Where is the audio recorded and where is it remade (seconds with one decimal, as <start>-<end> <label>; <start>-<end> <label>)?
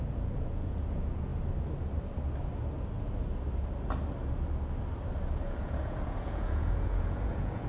0.0-1.3 remade; 1.3-5.4 recorded; 5.4-7.7 remade